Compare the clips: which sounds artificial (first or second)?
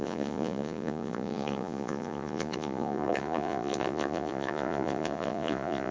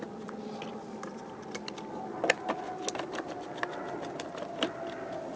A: first